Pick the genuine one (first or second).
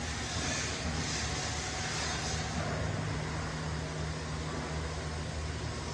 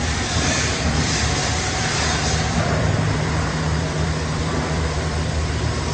first